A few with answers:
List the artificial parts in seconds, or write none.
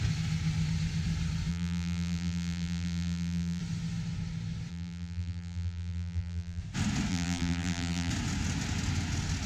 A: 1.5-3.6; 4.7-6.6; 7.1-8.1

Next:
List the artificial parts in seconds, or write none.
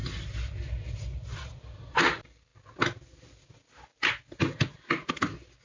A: none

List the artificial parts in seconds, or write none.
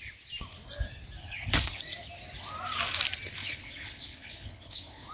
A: 1.2-1.8; 3.4-5.1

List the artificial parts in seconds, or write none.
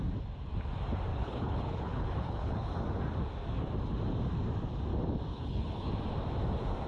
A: 1.1-2.7; 5.3-5.9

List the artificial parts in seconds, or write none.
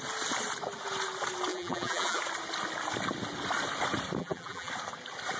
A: 1.5-2.2; 4.2-4.7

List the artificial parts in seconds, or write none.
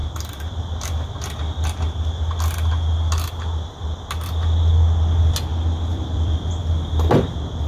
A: 0.0-0.5; 5.9-6.5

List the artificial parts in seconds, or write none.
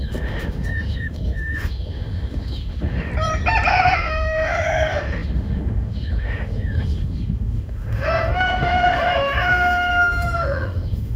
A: 0.0-3.1; 3.7-11.2